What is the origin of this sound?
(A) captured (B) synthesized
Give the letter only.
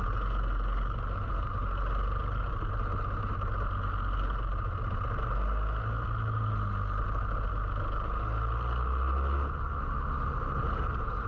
A